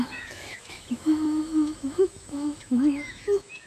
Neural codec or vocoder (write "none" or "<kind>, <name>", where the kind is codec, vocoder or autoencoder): autoencoder, DAC-VAE